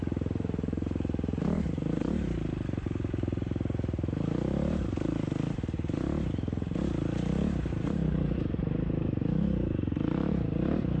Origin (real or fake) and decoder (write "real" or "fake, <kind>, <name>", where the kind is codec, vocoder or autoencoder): fake, vocoder, BigVGAN v2